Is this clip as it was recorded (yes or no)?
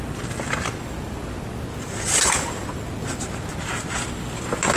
yes